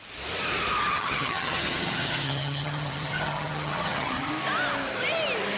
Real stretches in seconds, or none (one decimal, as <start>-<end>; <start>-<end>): 0.0-0.9; 4.3-5.6